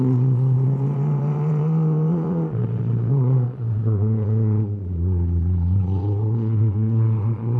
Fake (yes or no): yes